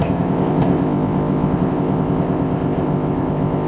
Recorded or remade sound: remade